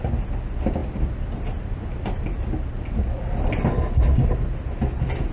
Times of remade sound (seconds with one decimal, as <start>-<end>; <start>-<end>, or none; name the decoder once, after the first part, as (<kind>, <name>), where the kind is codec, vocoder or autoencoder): none

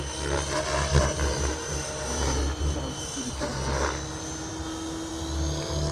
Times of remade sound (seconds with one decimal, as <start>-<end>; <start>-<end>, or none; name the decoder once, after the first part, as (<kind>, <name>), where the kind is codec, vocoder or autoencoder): 1.0-3.5 (vocoder, BigVGAN v2)

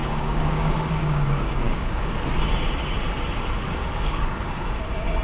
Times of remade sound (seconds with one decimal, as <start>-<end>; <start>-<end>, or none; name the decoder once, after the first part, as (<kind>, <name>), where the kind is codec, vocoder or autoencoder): 0.0-2.1 (codec, DAC); 3.8-4.8

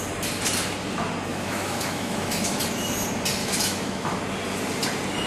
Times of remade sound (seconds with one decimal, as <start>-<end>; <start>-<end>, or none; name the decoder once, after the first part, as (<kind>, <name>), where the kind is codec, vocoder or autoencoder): 1.3-2.6 (autoencoder, DAC-VAE); 3.4-4.2

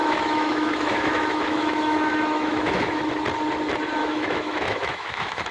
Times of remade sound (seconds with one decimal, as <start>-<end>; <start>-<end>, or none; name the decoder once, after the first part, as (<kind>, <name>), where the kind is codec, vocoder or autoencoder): 0.0-3.1 (autoencoder, DAC-VAE); 4.0-5.5

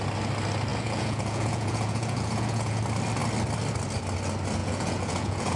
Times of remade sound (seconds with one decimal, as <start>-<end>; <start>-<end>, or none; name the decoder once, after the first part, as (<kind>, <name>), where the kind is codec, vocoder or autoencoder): 0.7-2.8 (vocoder, Vocos); 4.6-5.6

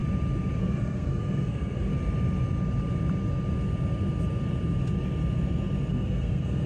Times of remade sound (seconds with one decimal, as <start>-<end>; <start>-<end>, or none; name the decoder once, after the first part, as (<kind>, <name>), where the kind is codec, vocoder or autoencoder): 0.6-1.9 (codec, SNAC); 5.9-6.7